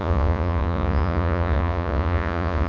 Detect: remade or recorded remade